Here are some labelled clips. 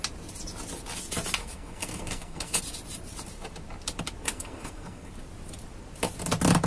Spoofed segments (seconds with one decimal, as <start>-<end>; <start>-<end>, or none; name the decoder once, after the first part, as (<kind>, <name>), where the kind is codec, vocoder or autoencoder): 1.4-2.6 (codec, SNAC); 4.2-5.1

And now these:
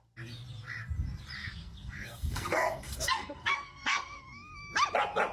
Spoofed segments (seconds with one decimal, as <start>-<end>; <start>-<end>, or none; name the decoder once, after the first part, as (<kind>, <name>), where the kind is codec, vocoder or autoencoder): 1.4-4.6 (codec, SNAC)

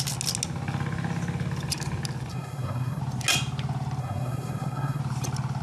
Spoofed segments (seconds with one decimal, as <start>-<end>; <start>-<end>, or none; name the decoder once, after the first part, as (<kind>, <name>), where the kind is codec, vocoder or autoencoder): 2.3-3.0 (codec, SNAC); 4.0-5.0

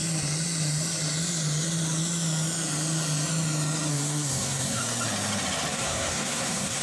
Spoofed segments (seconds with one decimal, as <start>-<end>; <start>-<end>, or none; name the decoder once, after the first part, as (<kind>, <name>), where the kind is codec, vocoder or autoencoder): 3.9-4.8 (codec, SNAC); 5.7-6.8

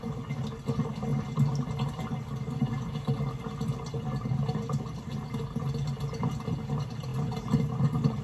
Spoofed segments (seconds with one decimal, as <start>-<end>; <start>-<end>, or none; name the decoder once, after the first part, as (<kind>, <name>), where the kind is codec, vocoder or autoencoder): none